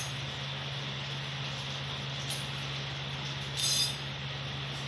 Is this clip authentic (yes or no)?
yes